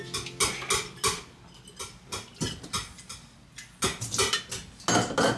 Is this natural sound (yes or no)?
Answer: yes